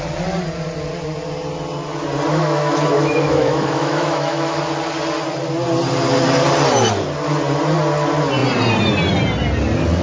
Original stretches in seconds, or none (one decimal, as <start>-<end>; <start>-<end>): 0.0-2.3; 4.6-10.0